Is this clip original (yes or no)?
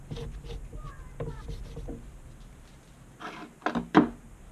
yes